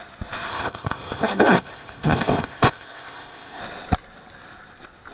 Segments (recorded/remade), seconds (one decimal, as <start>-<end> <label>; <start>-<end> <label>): 0.0-0.5 recorded; 0.5-3.6 remade; 3.6-5.1 recorded